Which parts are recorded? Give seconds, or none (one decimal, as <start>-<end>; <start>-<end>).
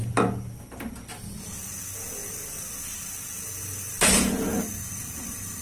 0.0-5.6